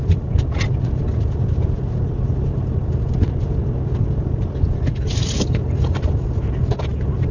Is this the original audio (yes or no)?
yes